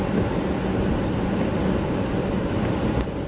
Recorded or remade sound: recorded